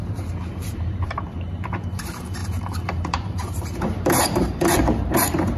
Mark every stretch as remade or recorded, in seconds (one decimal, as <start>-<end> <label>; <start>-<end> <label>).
0.0-5.6 remade